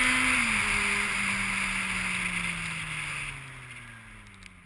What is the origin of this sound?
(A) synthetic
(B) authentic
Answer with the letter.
B